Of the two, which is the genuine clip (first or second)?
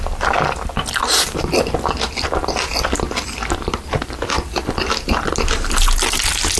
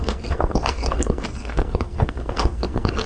first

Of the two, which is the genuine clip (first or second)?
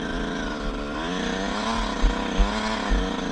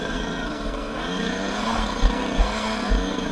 first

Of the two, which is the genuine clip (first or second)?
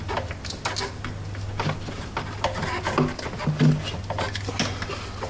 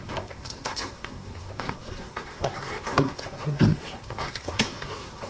first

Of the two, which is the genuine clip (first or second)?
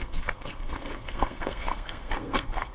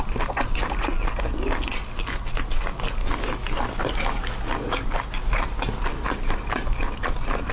second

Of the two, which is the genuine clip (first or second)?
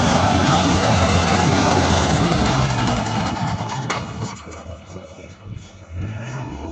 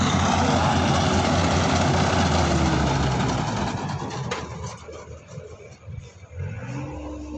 second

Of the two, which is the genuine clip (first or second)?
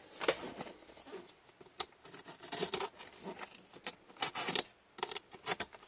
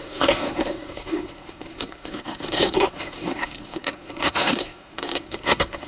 first